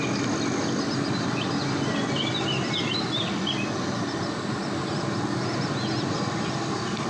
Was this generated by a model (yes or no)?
no